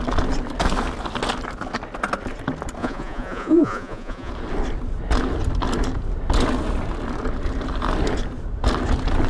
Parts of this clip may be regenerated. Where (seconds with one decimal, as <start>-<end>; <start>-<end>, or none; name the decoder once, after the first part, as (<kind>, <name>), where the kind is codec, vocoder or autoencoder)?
2.8-4.3 (vocoder, Vocos)